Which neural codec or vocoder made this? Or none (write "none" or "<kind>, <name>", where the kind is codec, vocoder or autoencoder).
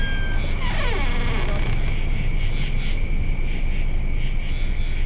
none